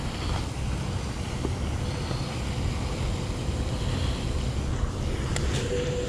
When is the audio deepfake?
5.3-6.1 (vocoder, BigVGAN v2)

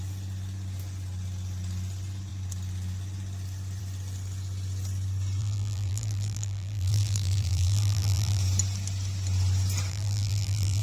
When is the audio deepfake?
5.4-8.4 (vocoder, BigVGAN v2); 9.9-10.8

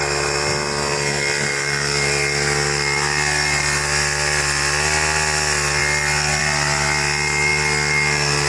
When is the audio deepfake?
none

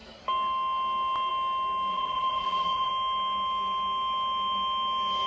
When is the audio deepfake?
1.9-2.9 (vocoder, BigVGAN v2)

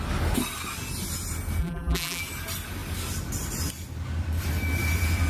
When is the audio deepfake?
1.6-2.2 (vocoder, BigVGAN v2)

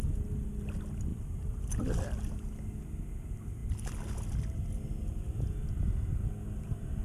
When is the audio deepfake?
1.1-1.7 (vocoder, BigVGAN v2)